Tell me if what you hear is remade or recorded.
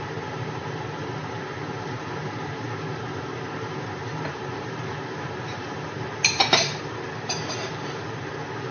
remade